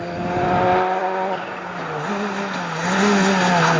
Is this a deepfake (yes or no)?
no